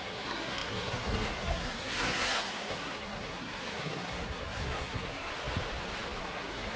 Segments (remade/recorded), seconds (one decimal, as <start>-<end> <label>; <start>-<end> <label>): 0.0-5.3 remade; 5.3-6.2 recorded; 6.2-6.8 remade